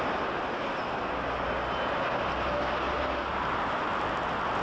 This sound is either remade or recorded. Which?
recorded